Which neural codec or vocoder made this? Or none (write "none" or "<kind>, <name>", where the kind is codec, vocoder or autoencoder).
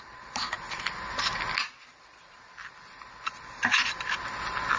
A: none